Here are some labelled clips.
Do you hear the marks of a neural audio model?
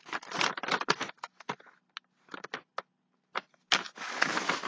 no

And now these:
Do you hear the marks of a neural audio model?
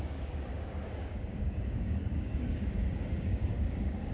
yes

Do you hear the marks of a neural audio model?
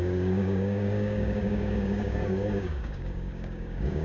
yes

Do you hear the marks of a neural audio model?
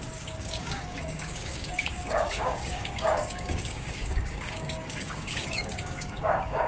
yes